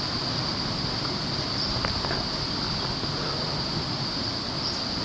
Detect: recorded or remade recorded